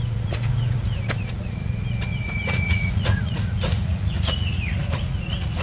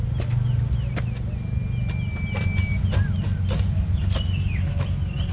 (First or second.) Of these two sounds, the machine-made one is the first